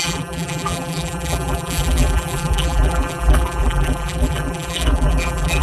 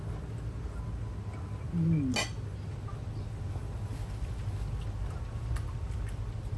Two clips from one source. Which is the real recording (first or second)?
second